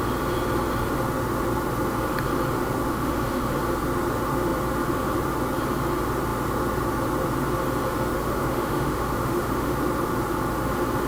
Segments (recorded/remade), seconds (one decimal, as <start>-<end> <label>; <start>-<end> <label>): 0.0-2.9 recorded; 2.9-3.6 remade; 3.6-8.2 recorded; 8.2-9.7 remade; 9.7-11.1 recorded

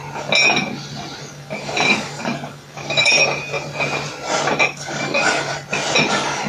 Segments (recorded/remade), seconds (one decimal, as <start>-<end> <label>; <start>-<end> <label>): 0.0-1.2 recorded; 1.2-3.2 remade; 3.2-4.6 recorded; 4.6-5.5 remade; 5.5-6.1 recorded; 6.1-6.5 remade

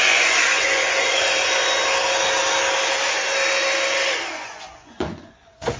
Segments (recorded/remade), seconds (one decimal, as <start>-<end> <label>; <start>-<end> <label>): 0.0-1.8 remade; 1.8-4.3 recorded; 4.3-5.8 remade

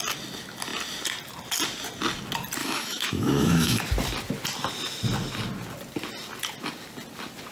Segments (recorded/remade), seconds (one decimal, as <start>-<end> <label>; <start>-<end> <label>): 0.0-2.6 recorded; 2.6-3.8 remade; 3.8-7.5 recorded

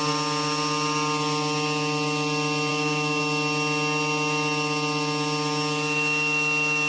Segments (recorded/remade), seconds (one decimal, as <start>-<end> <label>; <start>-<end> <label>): 0.0-2.7 recorded; 2.7-3.2 remade; 3.2-6.9 recorded

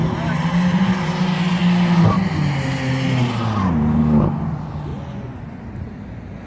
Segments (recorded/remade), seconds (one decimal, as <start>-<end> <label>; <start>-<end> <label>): 0.0-4.9 recorded; 4.9-5.6 remade; 5.6-6.5 recorded

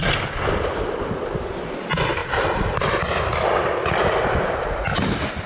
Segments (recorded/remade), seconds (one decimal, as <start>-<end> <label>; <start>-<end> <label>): 0.0-5.5 recorded

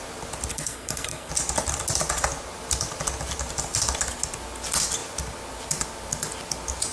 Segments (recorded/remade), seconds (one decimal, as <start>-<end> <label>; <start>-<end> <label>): 0.0-0.5 recorded; 0.5-1.3 remade; 1.3-6.9 recorded